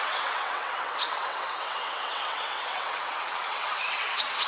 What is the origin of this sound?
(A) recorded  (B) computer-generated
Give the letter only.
B